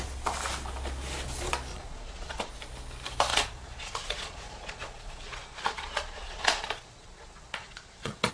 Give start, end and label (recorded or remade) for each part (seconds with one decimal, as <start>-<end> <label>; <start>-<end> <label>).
0.0-1.7 recorded; 1.7-2.5 remade; 2.5-3.3 recorded; 3.3-8.3 remade